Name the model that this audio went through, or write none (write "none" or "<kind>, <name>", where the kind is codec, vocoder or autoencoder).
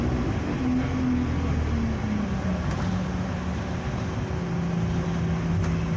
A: none